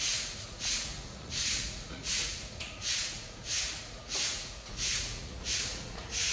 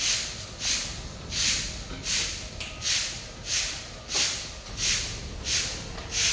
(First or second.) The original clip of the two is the second